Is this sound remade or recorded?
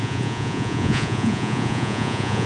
remade